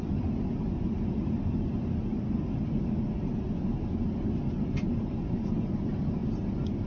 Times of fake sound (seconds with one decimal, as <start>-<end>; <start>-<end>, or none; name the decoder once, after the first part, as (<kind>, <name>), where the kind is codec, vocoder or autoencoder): none